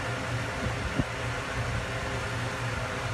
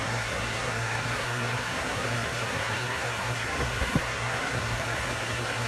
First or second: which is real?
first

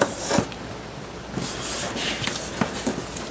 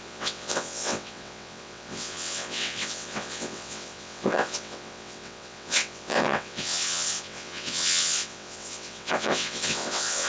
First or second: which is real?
first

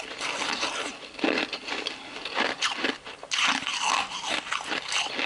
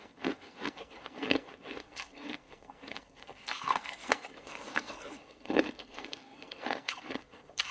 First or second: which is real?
first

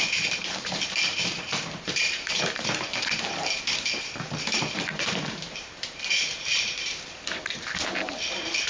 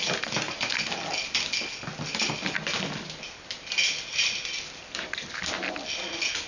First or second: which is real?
second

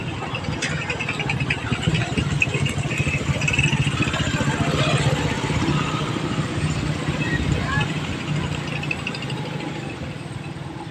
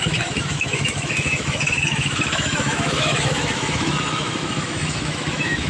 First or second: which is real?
first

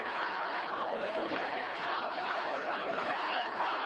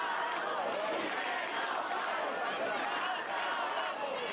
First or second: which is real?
second